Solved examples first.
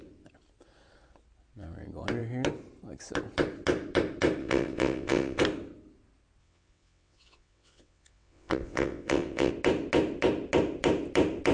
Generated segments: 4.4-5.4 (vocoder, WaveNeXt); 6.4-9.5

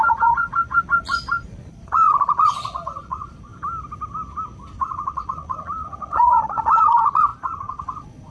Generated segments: 0.0-3.5 (vocoder, Vocos); 4.7-8.3

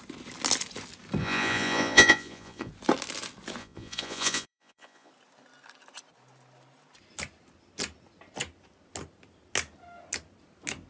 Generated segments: 1.2-2.7 (vocoder, Vocos); 3.6-5.1

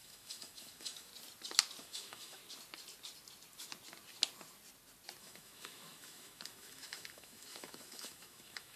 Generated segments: 0.0-1.1 (autoencoder, DAC-VAE); 1.8-2.4; 5.2-8.8

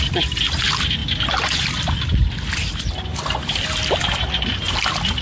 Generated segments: 0.0-5.2 (vocoder, BigVGAN v2)